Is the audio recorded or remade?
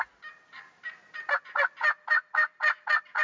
recorded